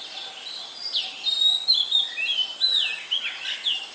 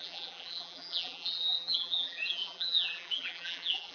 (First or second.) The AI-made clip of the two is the second